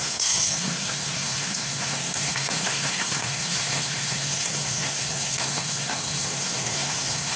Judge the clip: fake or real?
fake